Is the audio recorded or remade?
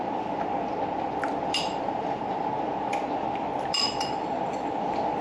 recorded